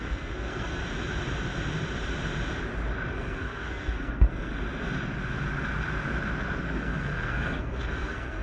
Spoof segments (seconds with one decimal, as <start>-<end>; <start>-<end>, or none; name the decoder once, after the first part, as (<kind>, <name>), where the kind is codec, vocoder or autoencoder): 0.0-0.8 (codec, SNAC); 3.1-4.5; 6.6-8.4